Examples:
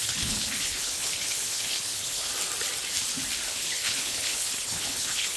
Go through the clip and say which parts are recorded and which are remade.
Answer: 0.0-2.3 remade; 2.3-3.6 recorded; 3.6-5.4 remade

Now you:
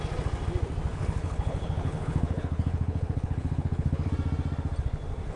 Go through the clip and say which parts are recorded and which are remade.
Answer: 0.0-0.9 recorded; 0.9-4.1 remade; 4.1-5.4 recorded

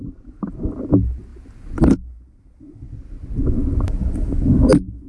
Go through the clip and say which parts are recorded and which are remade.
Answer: 0.0-5.1 recorded

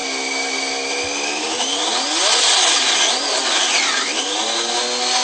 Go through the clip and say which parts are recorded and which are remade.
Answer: 0.0-5.2 recorded